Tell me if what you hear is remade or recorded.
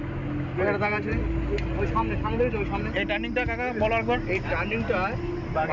recorded